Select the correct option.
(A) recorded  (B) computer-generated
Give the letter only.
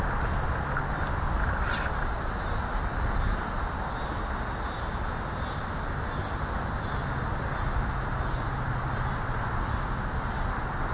A